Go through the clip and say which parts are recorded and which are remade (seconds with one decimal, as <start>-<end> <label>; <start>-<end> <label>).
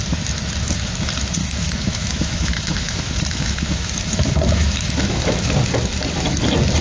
0.0-1.4 recorded; 1.4-5.5 remade; 5.5-6.8 recorded